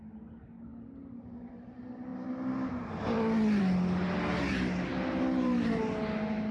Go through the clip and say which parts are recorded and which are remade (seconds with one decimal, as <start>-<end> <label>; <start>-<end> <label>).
0.0-6.5 recorded